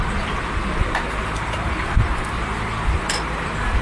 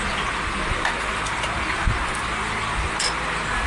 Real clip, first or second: second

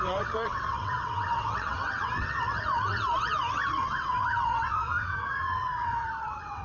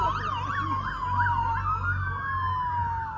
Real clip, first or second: second